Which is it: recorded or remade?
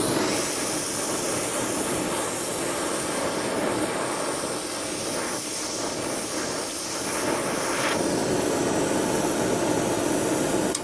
recorded